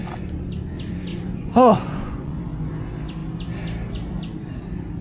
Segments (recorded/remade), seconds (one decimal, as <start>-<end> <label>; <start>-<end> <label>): 0.0-1.1 recorded; 1.1-2.4 remade; 2.4-5.0 recorded